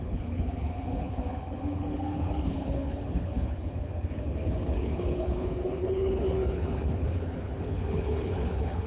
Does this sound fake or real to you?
fake